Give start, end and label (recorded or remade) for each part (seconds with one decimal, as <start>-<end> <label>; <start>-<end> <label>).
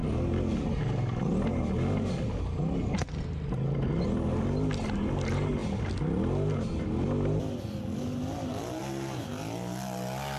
0.0-10.4 recorded